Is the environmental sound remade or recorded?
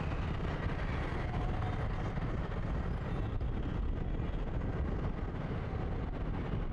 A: recorded